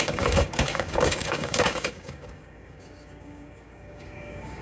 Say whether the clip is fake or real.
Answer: fake